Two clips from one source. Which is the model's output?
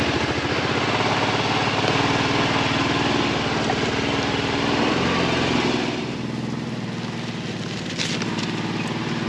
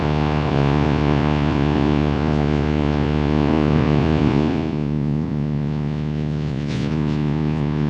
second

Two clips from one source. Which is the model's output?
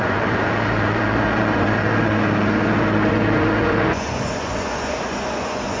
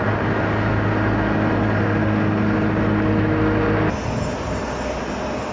first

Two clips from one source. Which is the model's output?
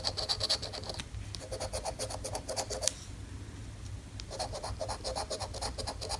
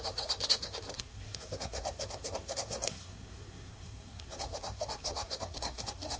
second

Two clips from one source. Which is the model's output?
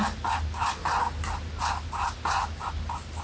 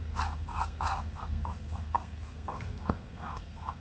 second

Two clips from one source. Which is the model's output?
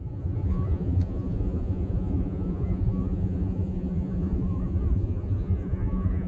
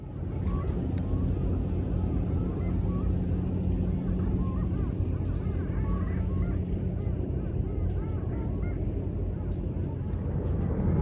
first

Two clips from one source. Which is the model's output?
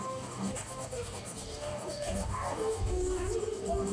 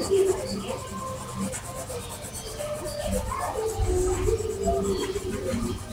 first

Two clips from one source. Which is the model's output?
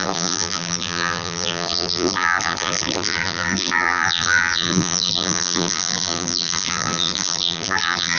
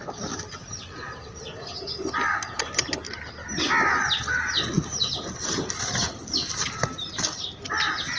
first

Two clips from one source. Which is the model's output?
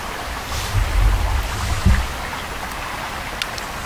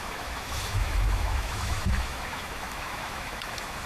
second